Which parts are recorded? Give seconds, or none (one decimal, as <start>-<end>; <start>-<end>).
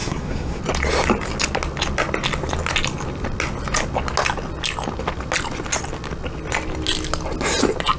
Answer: 0.6-8.0